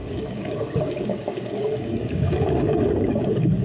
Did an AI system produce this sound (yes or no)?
yes